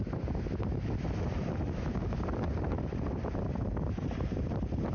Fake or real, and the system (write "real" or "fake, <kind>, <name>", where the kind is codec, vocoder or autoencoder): fake, vocoder, BigVGAN v2